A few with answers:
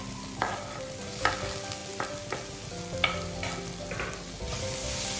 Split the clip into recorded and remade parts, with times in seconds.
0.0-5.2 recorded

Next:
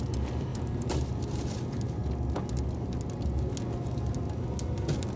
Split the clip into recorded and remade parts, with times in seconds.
0.0-0.5 recorded; 0.5-1.1 remade; 1.1-5.2 recorded

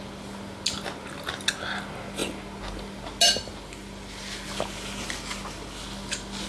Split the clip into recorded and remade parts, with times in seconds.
0.0-6.5 recorded

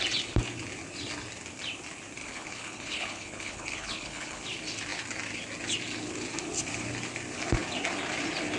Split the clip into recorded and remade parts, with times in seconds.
0.0-2.2 recorded; 2.2-4.4 remade; 4.4-8.6 recorded

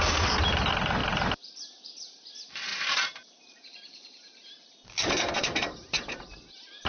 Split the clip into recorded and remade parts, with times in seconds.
0.0-1.0 recorded; 1.0-2.3 remade; 2.3-2.7 recorded; 2.7-6.2 remade; 6.2-6.9 recorded

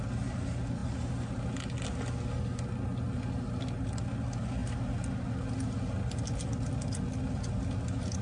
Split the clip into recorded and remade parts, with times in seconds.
0.0-8.2 recorded

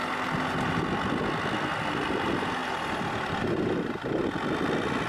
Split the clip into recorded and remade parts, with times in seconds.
0.0-5.1 recorded

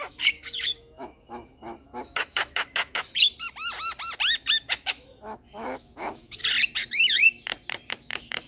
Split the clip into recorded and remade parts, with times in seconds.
0.0-3.3 remade; 3.3-4.6 recorded; 4.6-6.4 remade; 6.4-7.9 recorded; 7.9-8.5 remade